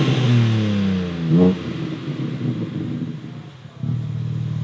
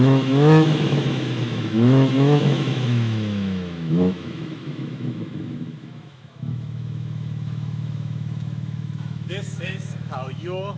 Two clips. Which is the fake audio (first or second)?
second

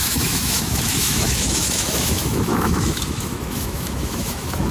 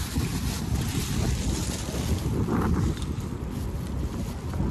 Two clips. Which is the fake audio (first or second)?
first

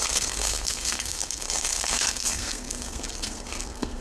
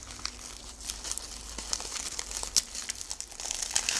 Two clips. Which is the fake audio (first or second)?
first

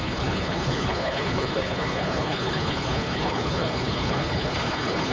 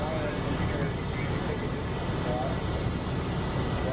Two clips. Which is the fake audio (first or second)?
first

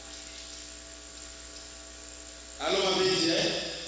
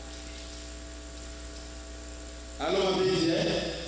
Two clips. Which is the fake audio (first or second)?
second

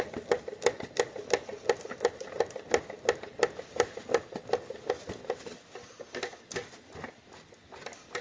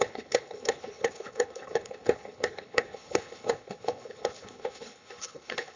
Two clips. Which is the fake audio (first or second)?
second